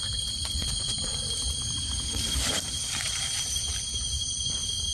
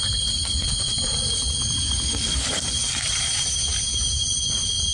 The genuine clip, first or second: second